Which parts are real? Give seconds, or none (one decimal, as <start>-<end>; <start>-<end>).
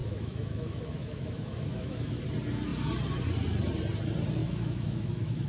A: 2.2-4.4